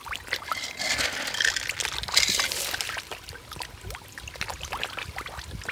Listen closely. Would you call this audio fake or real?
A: real